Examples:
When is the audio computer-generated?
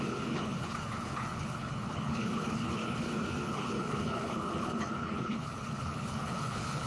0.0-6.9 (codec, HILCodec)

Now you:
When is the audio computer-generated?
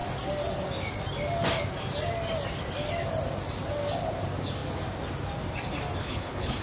6.0-6.6 (codec, HILCodec)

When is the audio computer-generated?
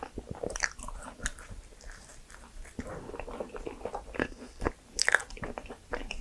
4.2-4.7 (codec, HILCodec)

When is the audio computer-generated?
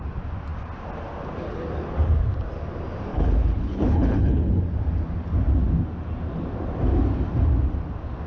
3.1-4.6 (codec, HILCodec)